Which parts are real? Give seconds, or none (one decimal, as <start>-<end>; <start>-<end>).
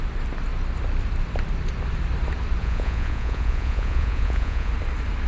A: 0.0-2.6; 4.7-5.3